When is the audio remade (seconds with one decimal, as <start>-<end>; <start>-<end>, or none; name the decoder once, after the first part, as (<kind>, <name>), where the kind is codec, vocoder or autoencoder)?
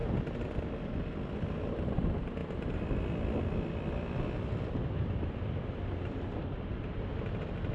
0.0-0.6 (vocoder, BigVGAN v2)